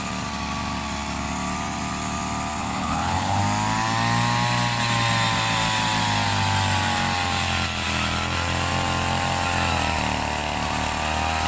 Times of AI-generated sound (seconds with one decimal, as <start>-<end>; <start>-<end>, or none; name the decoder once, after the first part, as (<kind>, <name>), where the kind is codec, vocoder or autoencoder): 2.6-3.4 (codec, HILCodec)